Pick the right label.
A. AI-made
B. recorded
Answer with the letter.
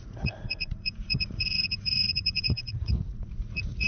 A